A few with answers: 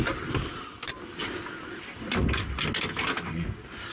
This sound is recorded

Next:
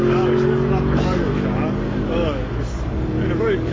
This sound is remade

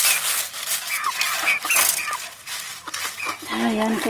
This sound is recorded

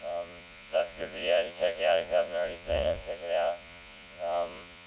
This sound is remade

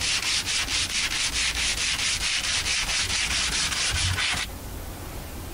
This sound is recorded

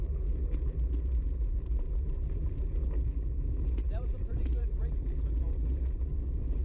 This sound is remade